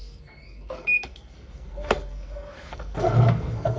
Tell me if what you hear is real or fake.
fake